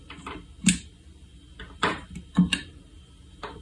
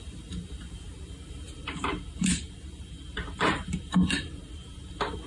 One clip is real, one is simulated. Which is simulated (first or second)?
second